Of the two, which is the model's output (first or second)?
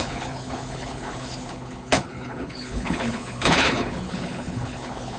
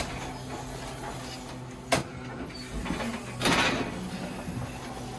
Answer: first